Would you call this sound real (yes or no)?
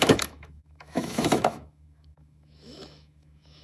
no